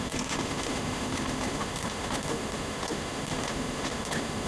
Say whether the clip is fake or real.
fake